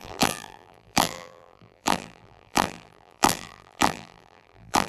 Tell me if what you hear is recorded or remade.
remade